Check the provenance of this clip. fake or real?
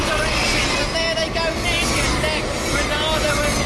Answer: real